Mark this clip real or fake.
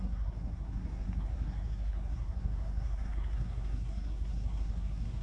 fake